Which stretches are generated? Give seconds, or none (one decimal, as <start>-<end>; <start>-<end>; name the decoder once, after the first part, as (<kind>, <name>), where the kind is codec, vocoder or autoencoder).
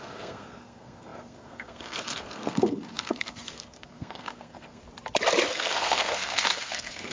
0.0-4.8 (codec, SNAC); 5.5-7.1